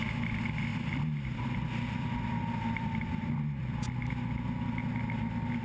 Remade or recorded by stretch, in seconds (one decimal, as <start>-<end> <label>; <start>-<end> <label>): 0.0-0.7 recorded; 0.7-4.1 remade; 4.1-5.6 recorded